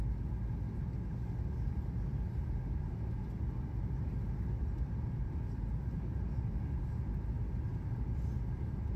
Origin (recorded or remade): recorded